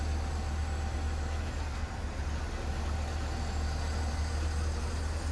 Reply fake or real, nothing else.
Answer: real